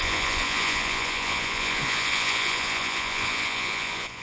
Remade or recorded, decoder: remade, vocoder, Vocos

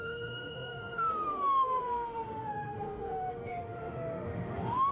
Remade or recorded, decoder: remade, autoencoder, DAC-VAE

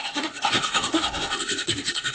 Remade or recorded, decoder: remade, codec, SNAC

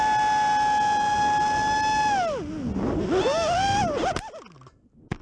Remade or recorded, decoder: recorded